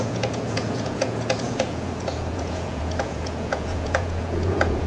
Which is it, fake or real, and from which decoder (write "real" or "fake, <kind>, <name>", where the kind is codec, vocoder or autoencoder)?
fake, vocoder, Vocos